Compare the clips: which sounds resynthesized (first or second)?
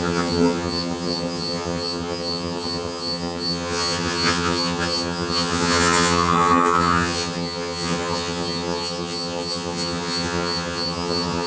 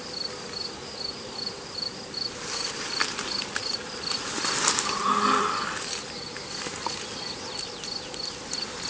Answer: first